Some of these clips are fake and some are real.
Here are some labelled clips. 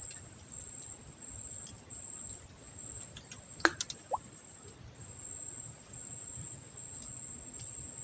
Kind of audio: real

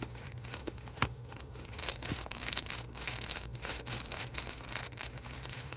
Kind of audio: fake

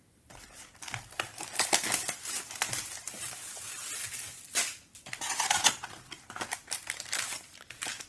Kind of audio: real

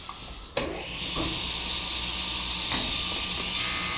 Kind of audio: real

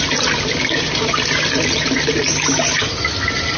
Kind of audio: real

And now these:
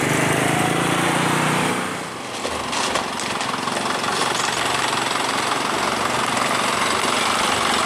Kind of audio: real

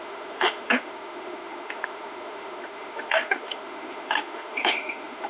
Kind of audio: fake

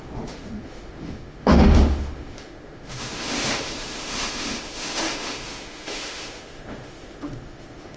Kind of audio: fake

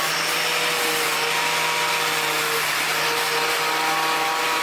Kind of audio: real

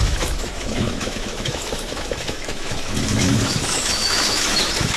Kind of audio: fake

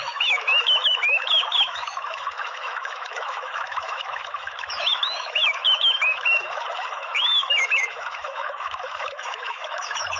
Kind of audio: fake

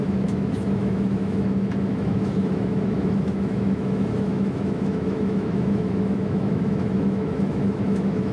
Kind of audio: fake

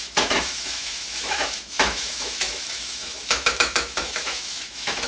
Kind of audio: fake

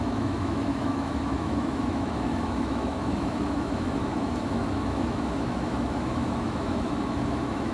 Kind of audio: fake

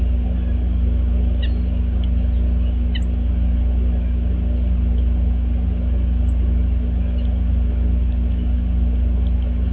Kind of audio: real